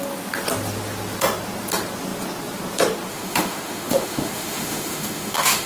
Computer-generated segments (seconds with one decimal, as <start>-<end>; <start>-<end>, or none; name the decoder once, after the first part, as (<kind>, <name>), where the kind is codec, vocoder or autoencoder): 3.1-5.7 (autoencoder, DAC-VAE)